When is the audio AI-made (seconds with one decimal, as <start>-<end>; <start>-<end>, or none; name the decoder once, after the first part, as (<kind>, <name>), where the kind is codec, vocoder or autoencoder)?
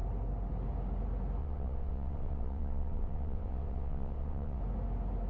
1.4-4.6 (vocoder, WaveNeXt)